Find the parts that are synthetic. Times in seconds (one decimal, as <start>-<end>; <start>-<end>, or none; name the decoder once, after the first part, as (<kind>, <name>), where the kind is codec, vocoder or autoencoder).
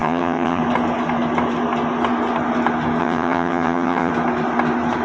0.0-0.6 (vocoder, HiFi-GAN); 3.0-4.1